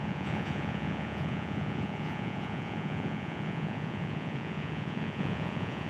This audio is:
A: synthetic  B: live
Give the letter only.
A